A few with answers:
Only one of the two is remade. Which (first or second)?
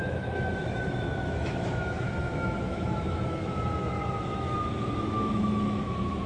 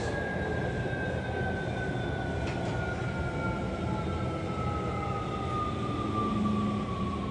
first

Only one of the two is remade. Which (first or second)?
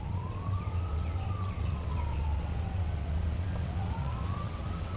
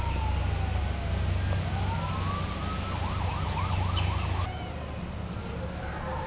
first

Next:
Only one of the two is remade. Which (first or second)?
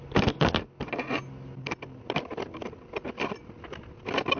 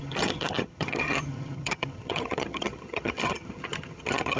second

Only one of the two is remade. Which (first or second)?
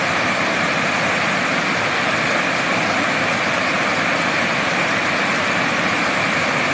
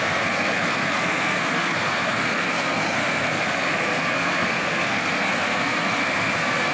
second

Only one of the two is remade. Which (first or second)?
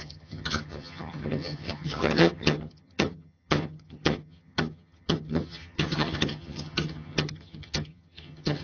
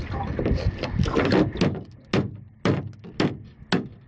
first